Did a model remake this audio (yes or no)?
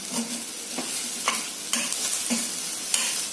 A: no